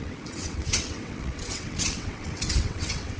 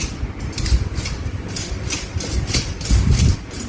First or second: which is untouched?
second